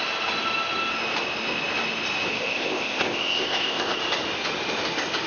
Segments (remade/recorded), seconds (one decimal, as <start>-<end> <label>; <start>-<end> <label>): 0.0-2.3 recorded; 2.3-4.0 remade; 4.0-5.3 recorded